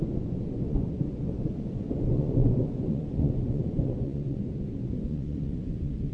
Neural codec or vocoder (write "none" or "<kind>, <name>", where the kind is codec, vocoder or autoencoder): vocoder, Vocos